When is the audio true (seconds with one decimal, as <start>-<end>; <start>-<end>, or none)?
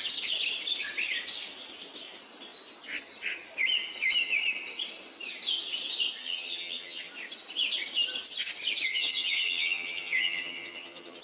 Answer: 0.0-6.2; 7.1-8.9